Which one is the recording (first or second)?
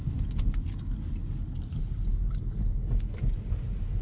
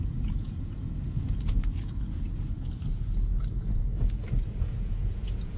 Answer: first